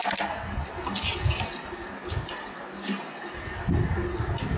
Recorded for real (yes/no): yes